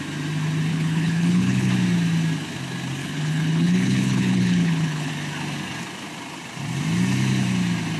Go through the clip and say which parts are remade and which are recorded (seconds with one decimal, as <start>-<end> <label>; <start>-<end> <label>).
0.0-0.7 recorded; 0.7-1.7 remade; 1.7-3.0 recorded; 3.0-5.1 remade; 5.1-8.0 recorded